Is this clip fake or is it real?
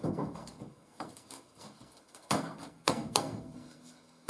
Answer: fake